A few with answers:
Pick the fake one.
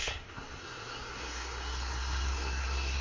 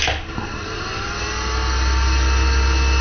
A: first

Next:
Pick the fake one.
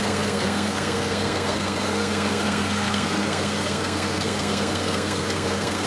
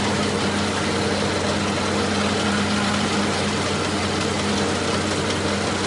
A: first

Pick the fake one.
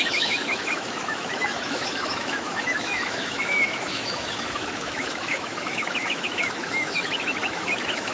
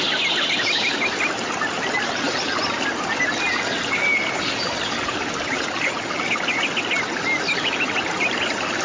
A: first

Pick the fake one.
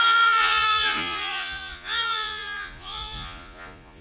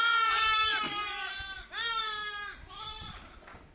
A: first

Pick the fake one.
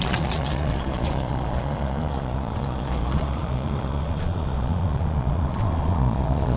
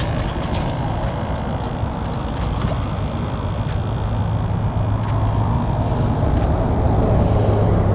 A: first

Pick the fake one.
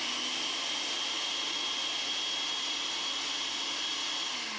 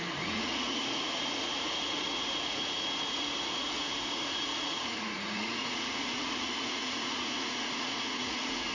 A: second